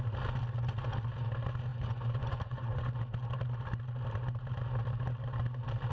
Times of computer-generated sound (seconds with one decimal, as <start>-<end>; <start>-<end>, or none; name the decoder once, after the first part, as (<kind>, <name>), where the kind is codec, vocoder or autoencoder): 1.7-3.0 (vocoder, Vocos)